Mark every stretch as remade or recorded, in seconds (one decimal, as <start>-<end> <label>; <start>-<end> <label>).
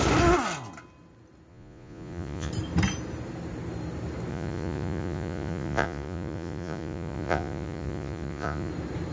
0.0-1.5 recorded; 1.5-2.5 remade; 2.5-4.3 recorded; 4.3-8.7 remade; 8.7-9.1 recorded